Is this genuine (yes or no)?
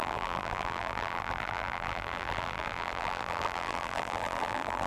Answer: no